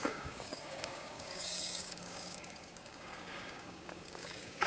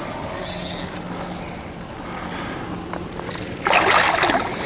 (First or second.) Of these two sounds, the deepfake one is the first